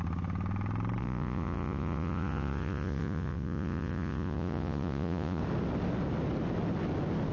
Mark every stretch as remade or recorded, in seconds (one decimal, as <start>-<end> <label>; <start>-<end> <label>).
0.0-1.0 recorded; 1.0-5.4 remade; 5.4-7.3 recorded